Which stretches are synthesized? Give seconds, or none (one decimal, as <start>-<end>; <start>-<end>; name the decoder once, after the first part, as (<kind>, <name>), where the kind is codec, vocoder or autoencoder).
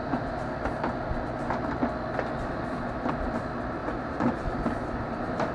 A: 3.8-5.5 (vocoder, BigVGAN v2)